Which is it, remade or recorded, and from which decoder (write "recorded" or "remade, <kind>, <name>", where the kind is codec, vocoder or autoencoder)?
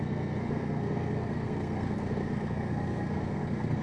remade, codec, SNAC